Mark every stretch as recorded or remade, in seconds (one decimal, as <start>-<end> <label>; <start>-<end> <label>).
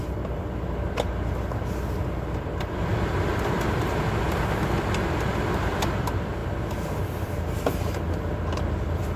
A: 0.0-9.2 recorded